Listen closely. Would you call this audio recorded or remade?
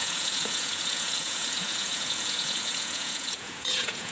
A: remade